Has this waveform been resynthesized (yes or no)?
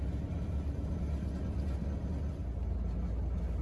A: no